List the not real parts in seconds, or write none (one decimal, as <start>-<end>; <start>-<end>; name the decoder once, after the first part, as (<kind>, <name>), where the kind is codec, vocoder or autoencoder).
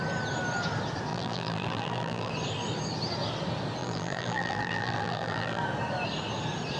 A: 1.1-2.3 (vocoder, BigVGAN v2); 3.8-5.6